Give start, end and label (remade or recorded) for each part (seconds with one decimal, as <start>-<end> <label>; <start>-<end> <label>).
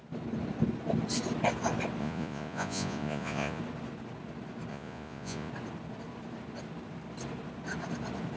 0.0-2.0 recorded; 2.0-3.6 remade; 3.6-4.7 recorded; 4.7-5.5 remade; 5.5-8.4 recorded